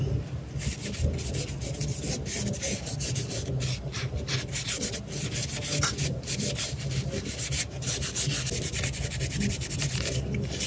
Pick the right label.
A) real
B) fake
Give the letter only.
A